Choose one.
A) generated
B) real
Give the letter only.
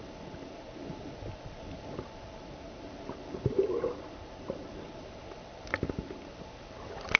B